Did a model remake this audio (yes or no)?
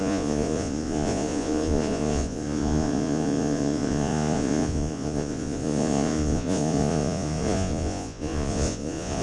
yes